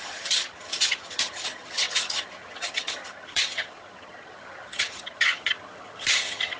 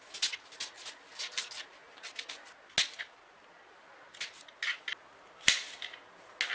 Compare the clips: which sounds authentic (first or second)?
second